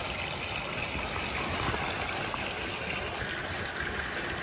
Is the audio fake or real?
real